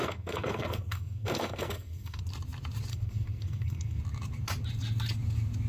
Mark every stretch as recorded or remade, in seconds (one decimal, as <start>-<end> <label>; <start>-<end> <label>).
0.0-2.2 remade; 2.2-2.9 recorded; 2.9-4.0 remade; 4.0-5.7 recorded